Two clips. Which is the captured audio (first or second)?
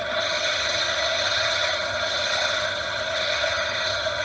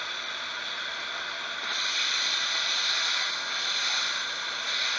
second